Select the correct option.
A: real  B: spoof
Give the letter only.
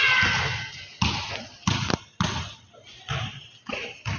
A